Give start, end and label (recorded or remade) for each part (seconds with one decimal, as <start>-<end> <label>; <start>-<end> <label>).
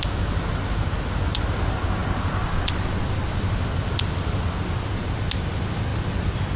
0.0-6.6 recorded